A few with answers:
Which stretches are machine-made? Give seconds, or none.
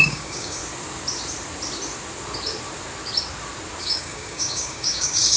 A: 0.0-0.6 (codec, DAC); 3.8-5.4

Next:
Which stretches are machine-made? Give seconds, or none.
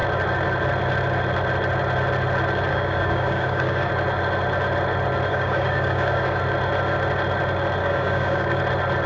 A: 2.7-3.9 (codec, DAC); 5.3-6.4; 7.8-8.6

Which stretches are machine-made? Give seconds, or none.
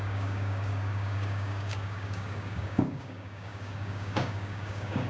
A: 0.0-5.1 (codec, DAC)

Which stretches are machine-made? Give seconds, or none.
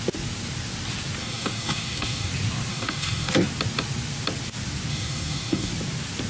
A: 1.2-2.3 (codec, DAC); 2.7-3.3; 4.9-5.7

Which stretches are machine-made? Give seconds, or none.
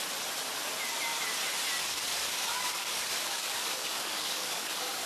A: 1.8-5.1 (codec, DAC)